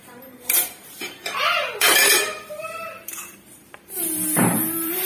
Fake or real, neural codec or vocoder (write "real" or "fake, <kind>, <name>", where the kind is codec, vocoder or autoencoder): fake, vocoder, BigVGAN v2